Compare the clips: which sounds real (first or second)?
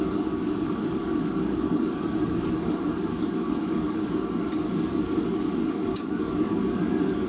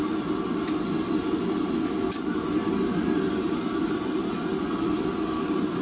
second